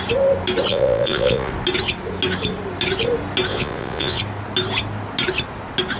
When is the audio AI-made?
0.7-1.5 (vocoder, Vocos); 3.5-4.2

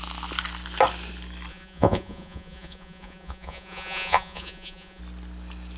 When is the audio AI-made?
1.5-5.0 (vocoder, Vocos)

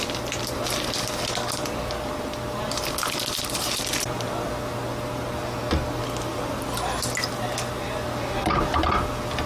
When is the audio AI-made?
none

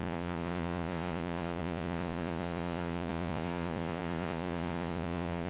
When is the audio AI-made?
0.0-5.5 (vocoder, Vocos)

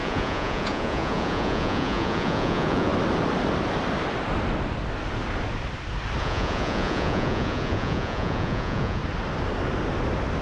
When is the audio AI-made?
0.0-2.9 (vocoder, Vocos); 6.2-9.0